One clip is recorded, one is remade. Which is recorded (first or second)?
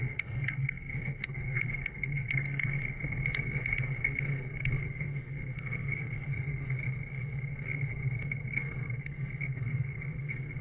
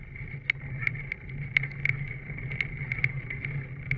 second